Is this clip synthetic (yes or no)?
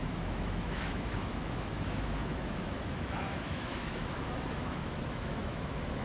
yes